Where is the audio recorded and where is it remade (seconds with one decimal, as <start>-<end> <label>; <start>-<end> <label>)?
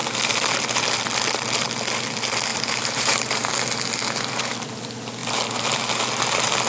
0.0-2.5 recorded; 2.5-3.5 remade; 3.5-6.7 recorded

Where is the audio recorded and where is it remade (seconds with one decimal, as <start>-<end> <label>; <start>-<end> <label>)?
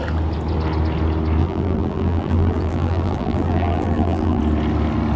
0.0-1.4 recorded; 1.4-4.4 remade; 4.4-5.2 recorded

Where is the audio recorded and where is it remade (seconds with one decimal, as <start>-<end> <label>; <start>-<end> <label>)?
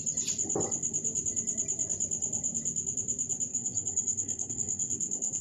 0.0-3.5 recorded; 3.5-5.4 remade